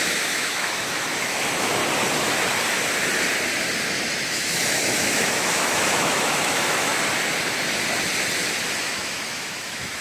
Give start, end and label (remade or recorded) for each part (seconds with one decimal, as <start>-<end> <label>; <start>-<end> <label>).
0.0-1.8 remade; 1.8-4.3 recorded; 4.3-6.9 remade; 6.9-8.8 recorded; 8.8-10.0 remade